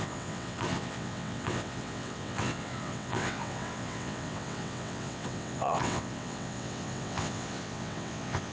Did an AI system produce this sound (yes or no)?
yes